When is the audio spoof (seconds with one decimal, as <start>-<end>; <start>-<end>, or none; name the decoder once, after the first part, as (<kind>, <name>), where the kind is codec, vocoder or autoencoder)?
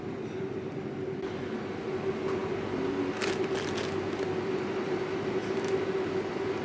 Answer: none